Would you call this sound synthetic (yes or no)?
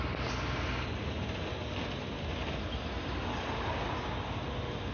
no